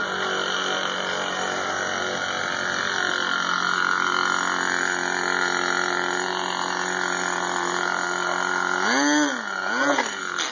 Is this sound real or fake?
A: real